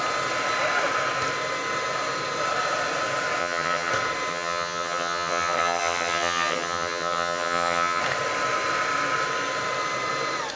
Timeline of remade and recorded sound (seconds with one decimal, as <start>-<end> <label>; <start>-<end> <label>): 0.0-3.4 recorded; 3.4-3.9 remade; 3.9-4.3 recorded; 4.3-8.0 remade; 8.0-10.6 recorded